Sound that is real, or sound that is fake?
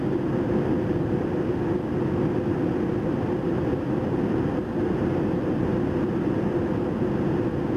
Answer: real